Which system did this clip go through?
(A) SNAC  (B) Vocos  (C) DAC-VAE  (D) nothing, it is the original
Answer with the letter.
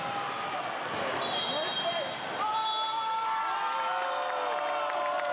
D